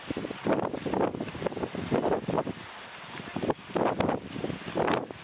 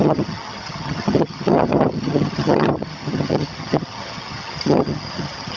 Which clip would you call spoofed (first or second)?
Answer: second